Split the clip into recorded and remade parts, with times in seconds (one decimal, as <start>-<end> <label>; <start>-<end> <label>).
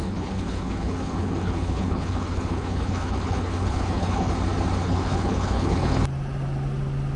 0.0-4.3 remade; 4.3-4.8 recorded; 4.8-6.0 remade; 6.0-7.2 recorded